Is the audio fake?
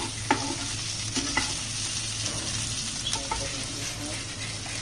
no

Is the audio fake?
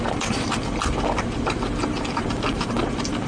no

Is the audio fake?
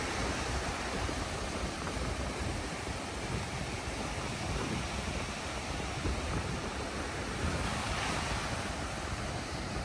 no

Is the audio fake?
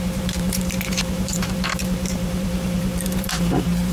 yes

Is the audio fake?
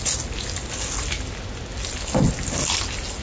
no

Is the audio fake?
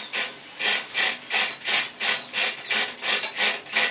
no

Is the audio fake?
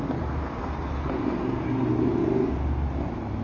no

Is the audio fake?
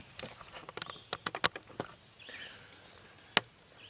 no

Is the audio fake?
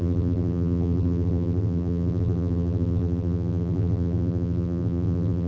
yes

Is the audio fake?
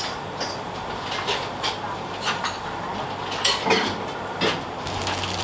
no